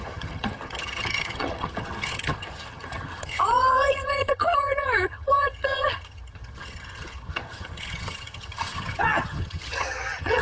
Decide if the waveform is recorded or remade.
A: remade